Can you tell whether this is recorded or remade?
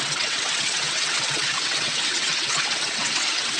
remade